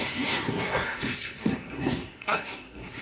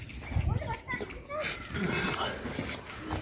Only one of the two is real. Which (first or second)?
second